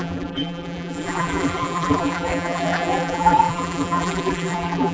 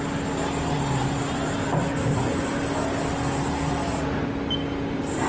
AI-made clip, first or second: first